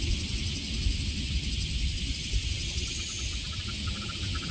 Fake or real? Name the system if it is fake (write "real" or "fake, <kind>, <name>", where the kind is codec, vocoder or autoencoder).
real